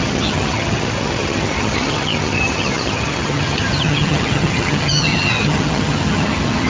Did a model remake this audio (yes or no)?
yes